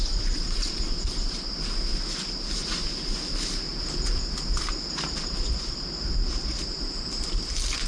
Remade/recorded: recorded